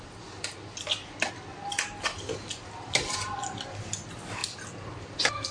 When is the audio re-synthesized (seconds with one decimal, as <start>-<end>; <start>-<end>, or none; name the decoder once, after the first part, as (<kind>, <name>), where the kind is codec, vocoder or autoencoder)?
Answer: none